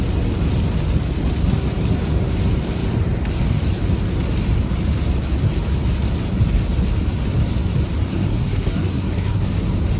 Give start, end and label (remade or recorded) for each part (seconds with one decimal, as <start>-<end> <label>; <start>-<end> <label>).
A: 0.0-8.1 recorded; 8.1-9.5 remade; 9.5-10.0 recorded